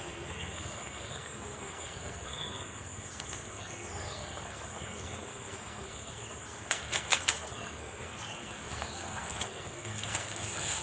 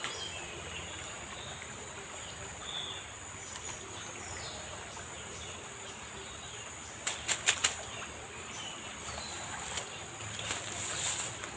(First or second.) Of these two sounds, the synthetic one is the first